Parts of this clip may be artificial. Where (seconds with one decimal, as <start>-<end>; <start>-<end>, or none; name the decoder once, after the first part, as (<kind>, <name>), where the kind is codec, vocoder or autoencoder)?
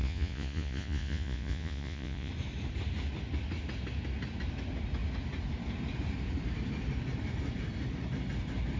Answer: 0.0-2.3 (vocoder, Vocos)